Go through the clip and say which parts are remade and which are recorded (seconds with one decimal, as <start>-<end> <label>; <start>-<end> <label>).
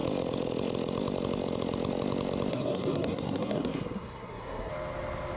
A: 0.0-2.5 recorded; 2.5-4.7 remade; 4.7-5.4 recorded